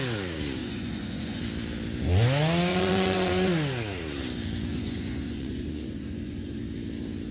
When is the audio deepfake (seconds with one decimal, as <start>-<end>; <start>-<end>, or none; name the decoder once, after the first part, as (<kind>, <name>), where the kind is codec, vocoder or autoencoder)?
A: 0.6-1.4 (vocoder, Vocos); 2.7-3.3; 4.7-6.6